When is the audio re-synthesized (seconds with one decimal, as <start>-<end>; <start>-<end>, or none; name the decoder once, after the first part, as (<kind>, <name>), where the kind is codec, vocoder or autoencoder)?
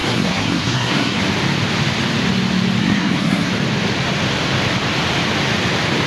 0.0-1.2 (codec, SNAC); 2.8-3.5